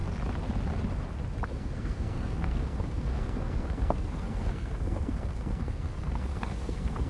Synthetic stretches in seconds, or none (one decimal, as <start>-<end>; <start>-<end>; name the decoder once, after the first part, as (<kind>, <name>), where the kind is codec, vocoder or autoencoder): 1.5-7.1 (codec, SNAC)